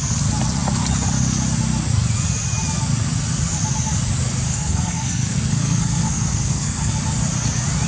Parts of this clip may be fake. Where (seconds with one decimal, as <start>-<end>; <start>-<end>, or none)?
4.5-6.9